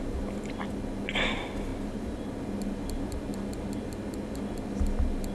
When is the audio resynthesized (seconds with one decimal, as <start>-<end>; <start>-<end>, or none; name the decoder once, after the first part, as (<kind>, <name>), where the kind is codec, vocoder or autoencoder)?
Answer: 1.7-2.4 (vocoder, BigVGAN v2)